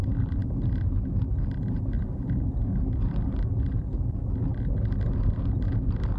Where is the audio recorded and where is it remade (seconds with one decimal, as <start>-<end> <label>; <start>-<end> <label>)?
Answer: 0.0-6.2 recorded